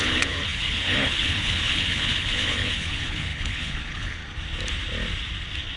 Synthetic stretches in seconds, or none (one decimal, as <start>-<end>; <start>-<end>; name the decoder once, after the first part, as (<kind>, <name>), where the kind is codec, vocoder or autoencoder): 0.0-4.2 (codec, HILCodec)